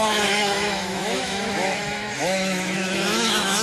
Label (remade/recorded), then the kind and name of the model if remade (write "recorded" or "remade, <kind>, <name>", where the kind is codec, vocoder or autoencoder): remade, autoencoder, DAC-VAE